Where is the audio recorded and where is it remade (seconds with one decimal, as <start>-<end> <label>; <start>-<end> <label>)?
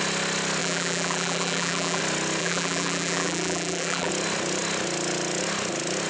0.0-0.6 recorded; 0.6-2.0 remade; 2.0-2.4 recorded; 2.4-4.1 remade; 4.1-6.1 recorded